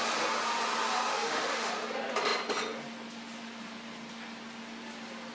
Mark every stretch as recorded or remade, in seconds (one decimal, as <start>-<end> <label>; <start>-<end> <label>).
0.0-1.1 recorded; 1.1-1.7 remade; 1.7-5.3 recorded